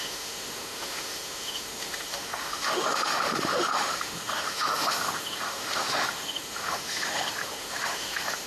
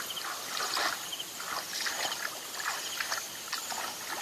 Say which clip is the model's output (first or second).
first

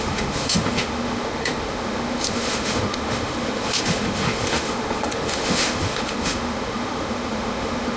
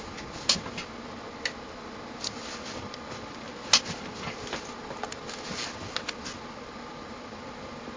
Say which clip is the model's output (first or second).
first